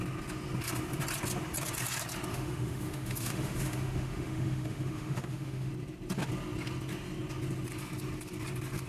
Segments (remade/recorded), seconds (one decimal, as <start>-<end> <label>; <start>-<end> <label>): 0.0-2.3 recorded; 2.3-5.7 remade; 5.7-8.9 recorded